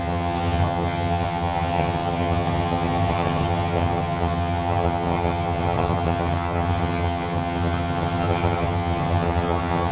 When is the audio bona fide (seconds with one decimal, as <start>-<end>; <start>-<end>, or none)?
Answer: none